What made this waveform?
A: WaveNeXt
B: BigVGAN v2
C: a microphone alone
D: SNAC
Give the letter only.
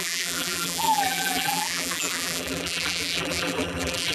B